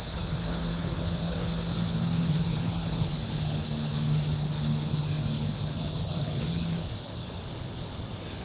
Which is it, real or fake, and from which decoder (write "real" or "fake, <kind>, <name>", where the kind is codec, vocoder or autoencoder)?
fake, codec, HILCodec